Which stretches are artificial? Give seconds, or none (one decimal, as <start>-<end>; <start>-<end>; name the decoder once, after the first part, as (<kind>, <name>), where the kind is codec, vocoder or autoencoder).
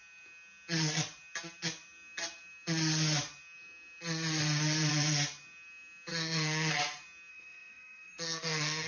6.1-6.7 (codec, SNAC); 7.3-8.9